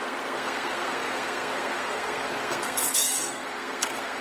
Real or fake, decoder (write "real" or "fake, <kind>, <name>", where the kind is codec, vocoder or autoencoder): fake, codec, SNAC